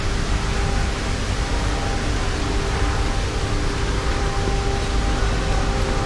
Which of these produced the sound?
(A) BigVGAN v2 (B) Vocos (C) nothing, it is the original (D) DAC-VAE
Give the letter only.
C